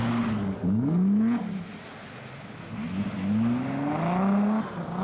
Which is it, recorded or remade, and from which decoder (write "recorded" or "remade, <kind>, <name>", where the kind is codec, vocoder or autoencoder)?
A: recorded